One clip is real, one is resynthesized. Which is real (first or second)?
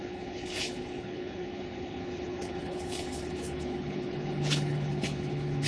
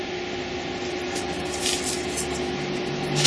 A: second